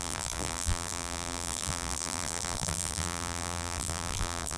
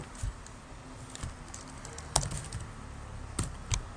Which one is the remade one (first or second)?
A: first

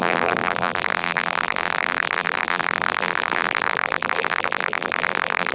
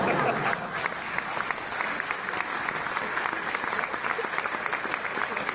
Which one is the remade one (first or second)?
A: first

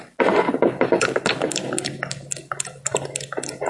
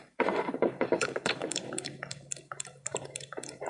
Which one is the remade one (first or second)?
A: second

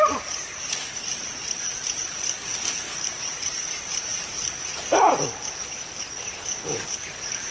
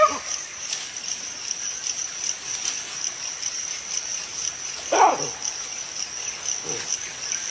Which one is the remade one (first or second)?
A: first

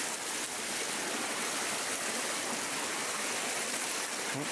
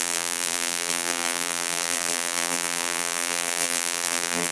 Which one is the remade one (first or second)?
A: second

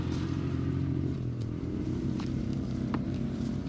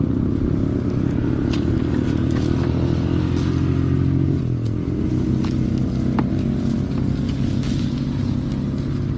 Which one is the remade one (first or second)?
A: first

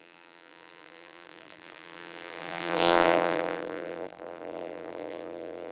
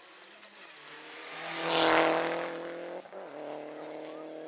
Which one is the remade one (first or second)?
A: first